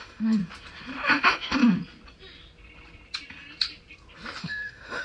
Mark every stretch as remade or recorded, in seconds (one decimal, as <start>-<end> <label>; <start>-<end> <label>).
0.0-0.4 remade; 0.4-1.1 recorded; 1.1-1.6 remade; 1.6-4.4 recorded; 4.4-5.0 remade